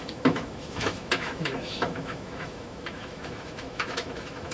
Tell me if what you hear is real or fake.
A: fake